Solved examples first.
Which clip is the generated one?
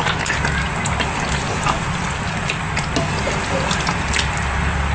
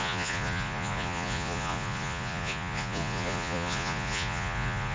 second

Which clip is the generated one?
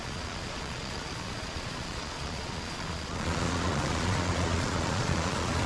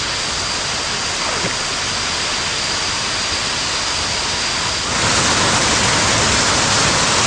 first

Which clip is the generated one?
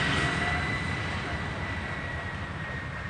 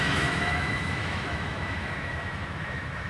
second